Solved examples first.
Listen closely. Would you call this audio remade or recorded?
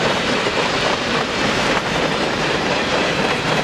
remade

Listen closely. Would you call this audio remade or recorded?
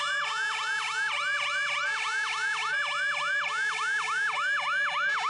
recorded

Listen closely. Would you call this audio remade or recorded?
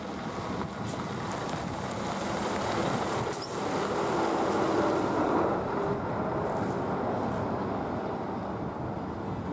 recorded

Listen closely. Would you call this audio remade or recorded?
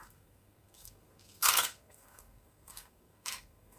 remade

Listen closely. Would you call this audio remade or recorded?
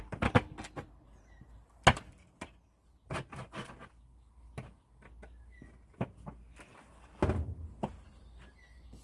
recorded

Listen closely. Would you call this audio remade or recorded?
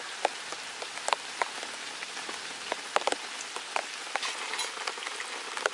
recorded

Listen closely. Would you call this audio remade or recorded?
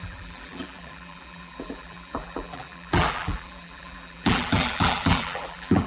remade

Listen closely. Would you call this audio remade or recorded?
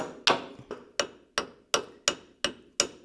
recorded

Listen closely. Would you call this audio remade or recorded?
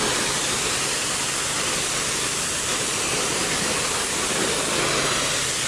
recorded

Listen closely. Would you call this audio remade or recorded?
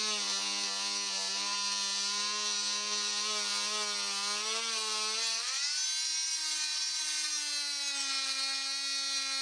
recorded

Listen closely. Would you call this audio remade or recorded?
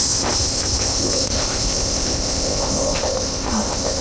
remade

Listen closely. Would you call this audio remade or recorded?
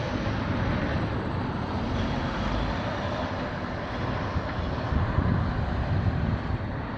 recorded